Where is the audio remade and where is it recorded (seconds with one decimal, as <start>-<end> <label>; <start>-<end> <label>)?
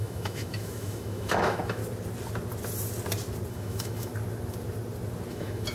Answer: 0.0-1.8 remade; 1.8-3.5 recorded; 3.5-4.1 remade; 4.1-5.3 recorded; 5.3-5.7 remade